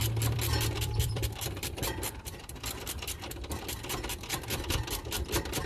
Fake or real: fake